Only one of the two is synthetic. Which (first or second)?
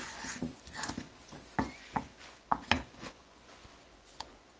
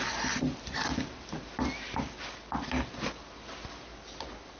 first